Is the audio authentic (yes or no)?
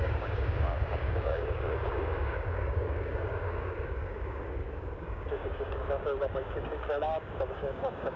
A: no